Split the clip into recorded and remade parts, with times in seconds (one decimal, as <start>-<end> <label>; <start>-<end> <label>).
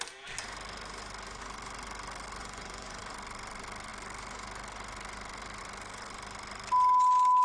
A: 0.0-2.4 recorded; 2.4-3.0 remade; 3.0-7.4 recorded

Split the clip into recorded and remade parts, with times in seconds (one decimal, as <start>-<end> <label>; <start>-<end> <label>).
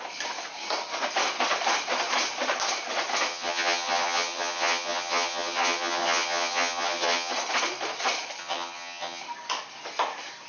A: 0.0-3.3 recorded; 3.3-7.3 remade; 7.3-8.4 recorded; 8.4-9.2 remade; 9.2-10.5 recorded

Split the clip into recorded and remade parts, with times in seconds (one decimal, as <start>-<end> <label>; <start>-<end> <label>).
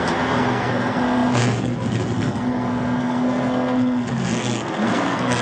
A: 0.0-5.4 remade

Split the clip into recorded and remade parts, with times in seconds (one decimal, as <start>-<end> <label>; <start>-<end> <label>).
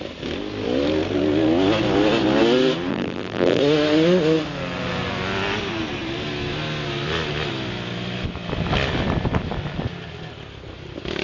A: 0.0-2.9 recorded; 2.9-3.6 remade; 3.6-11.2 recorded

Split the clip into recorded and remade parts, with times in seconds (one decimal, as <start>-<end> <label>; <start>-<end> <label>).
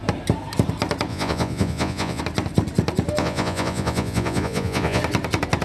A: 0.0-1.1 recorded; 1.1-2.2 remade; 2.2-3.2 recorded; 3.2-5.0 remade; 5.0-5.6 recorded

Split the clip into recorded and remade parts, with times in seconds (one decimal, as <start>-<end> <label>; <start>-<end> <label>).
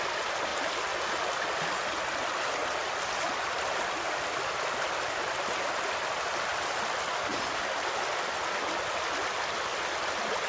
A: 0.0-10.5 recorded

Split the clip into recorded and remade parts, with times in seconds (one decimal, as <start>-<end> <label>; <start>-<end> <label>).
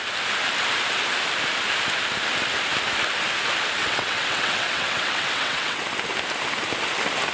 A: 0.0-3.8 recorded; 3.8-5.8 remade; 5.8-7.3 recorded